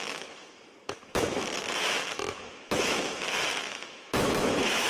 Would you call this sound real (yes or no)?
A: no